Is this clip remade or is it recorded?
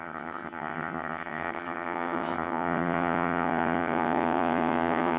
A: remade